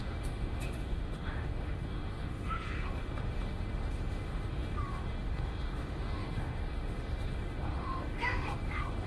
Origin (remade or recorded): remade